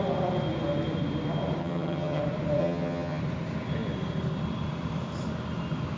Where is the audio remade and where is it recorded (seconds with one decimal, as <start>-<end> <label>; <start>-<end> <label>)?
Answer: 0.0-1.6 recorded; 1.6-2.2 remade; 2.2-2.6 recorded; 2.6-3.2 remade; 3.2-6.0 recorded